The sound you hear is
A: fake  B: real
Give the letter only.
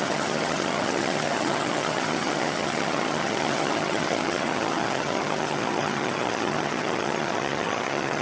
A